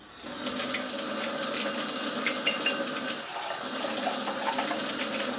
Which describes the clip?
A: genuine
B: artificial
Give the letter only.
A